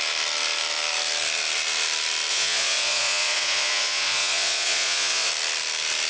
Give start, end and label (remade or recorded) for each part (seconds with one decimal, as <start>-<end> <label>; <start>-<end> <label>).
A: 0.0-2.3 recorded; 2.3-5.3 remade; 5.3-6.1 recorded